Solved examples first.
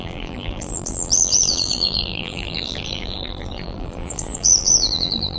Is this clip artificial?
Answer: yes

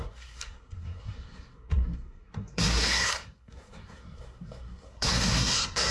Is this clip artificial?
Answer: yes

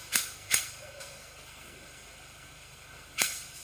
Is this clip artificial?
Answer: yes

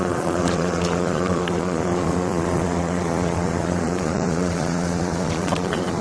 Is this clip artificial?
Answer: yes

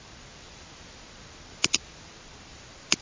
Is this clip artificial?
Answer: yes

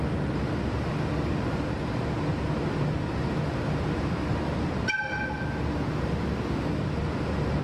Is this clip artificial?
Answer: no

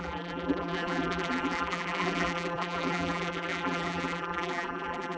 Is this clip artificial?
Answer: yes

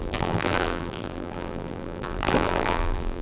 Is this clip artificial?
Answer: yes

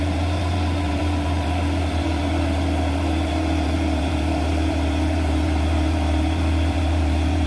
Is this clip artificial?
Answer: yes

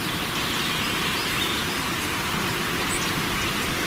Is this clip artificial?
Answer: no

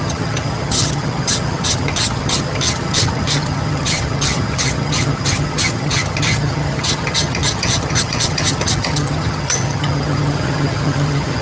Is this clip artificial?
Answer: yes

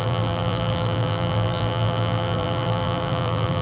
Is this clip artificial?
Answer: yes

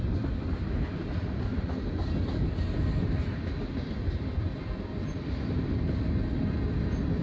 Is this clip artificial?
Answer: no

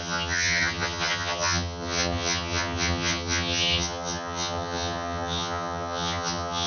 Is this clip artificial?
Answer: yes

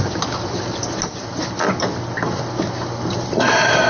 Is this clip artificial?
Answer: no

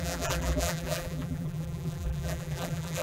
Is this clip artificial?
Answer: yes